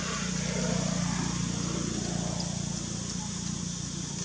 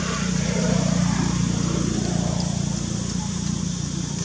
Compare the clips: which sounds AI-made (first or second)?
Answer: second